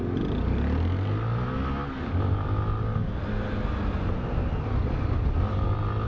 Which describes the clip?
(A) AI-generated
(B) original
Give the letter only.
B